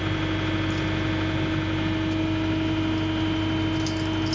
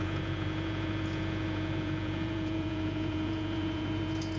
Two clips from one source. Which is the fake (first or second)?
second